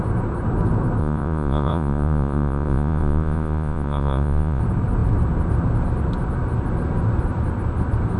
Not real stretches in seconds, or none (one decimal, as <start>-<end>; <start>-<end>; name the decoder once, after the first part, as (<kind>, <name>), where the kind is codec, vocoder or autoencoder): 1.0-4.6 (vocoder, Vocos)